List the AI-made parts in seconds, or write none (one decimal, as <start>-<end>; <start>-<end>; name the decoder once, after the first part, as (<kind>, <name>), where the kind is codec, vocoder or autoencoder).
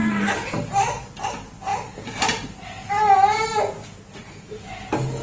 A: none